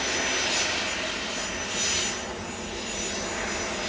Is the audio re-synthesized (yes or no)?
no